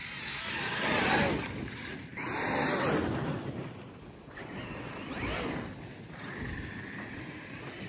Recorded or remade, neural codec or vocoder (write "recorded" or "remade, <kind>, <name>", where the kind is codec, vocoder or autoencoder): recorded